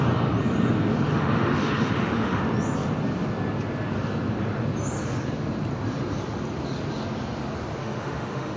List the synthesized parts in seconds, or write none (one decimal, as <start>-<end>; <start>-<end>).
1.1-2.4; 7.8-8.6